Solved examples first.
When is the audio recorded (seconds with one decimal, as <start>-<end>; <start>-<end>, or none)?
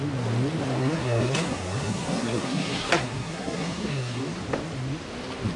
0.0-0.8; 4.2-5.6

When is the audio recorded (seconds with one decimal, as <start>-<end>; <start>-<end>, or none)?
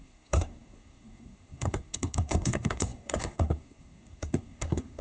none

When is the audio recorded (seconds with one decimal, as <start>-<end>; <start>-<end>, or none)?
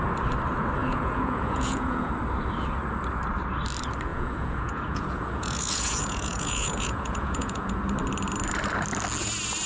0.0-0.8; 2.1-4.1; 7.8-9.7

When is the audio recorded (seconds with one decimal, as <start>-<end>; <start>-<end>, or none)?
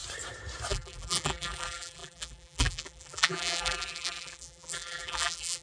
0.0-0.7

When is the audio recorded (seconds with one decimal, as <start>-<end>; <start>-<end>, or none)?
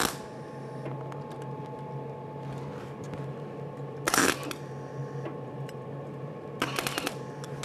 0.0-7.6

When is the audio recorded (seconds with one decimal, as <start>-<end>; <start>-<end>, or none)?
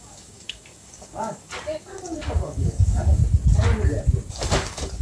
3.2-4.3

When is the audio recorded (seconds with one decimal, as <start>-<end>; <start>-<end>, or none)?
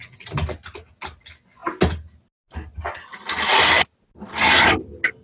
0.0-5.2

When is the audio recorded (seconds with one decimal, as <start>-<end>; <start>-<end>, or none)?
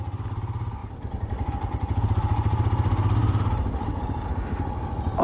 0.0-0.8; 1.5-3.2; 4.3-5.2